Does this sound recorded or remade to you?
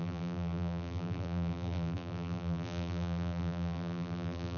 remade